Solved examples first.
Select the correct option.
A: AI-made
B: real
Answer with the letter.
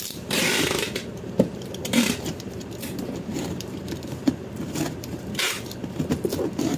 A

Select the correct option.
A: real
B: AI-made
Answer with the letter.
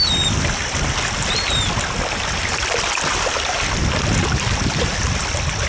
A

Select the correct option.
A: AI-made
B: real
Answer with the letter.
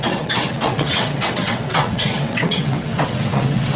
A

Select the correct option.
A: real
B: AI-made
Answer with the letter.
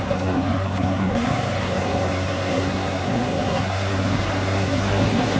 B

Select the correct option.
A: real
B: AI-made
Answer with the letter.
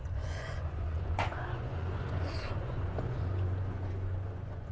B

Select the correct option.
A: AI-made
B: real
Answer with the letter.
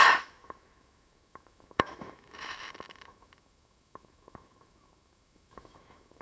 A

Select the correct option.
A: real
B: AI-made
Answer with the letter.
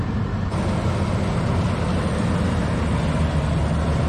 A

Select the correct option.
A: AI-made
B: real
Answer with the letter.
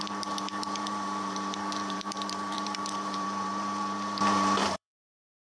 A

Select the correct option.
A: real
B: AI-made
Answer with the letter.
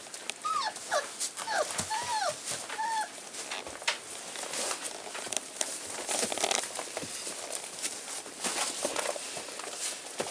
A